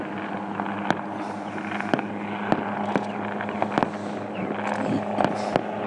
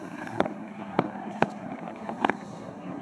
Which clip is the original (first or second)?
first